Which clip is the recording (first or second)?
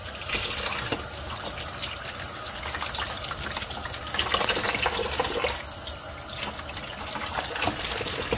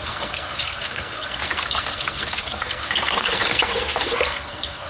first